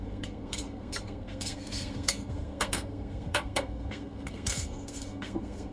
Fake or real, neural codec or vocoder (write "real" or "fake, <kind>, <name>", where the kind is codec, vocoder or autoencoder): fake, codec, SNAC